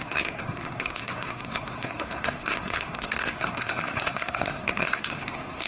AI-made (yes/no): yes